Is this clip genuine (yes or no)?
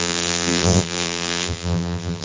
no